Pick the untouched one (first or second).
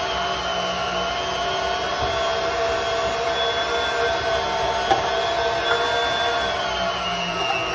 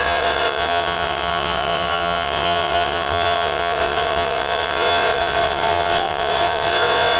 first